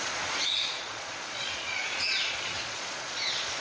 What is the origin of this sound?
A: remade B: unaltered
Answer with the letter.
A